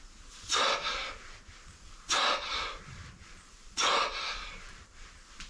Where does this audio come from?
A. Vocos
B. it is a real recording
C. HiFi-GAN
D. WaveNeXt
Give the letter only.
B